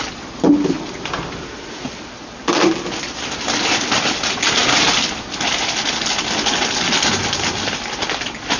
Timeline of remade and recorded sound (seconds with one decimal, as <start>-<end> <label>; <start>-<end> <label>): 0.0-8.6 recorded